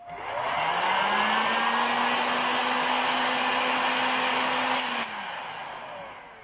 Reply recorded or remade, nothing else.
recorded